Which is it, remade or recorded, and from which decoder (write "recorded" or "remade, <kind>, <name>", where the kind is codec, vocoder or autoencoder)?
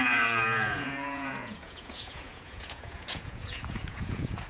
remade, vocoder, Vocos